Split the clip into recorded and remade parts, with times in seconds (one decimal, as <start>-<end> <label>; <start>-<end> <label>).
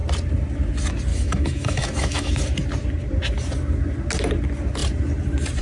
0.0-1.1 recorded; 1.1-2.3 remade; 2.3-5.6 recorded